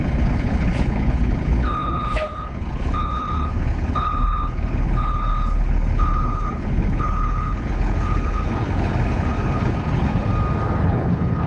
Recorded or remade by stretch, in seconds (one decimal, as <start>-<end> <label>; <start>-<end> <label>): 0.0-10.3 remade; 10.3-10.8 recorded; 10.8-11.5 remade

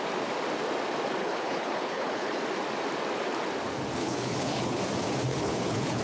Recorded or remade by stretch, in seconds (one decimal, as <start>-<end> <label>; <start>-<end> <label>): 0.0-1.2 recorded; 1.2-2.4 remade; 2.4-4.0 recorded; 4.0-4.8 remade; 4.8-5.3 recorded; 5.3-6.0 remade

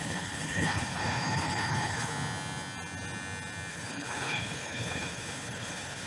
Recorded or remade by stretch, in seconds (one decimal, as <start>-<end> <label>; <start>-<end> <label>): 0.0-2.1 remade; 2.1-3.7 recorded; 3.7-6.1 remade

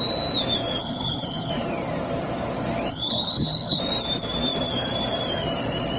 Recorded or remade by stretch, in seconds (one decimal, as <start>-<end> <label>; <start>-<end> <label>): 0.0-0.8 recorded; 0.8-1.5 remade; 1.5-2.9 recorded; 2.9-3.8 remade; 3.8-6.0 recorded